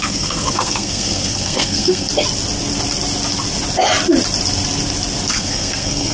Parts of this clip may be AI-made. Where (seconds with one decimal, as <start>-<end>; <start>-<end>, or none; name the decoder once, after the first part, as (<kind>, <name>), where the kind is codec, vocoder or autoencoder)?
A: 0.0-2.1 (codec, SNAC); 5.3-6.1